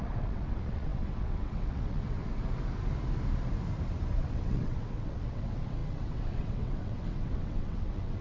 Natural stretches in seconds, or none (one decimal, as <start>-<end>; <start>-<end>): 2.4-4.1